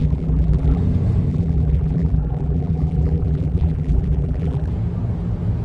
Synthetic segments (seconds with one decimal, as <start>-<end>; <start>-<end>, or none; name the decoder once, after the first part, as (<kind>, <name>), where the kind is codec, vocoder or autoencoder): 0.0-0.8 (vocoder, BigVGAN v2); 1.3-4.7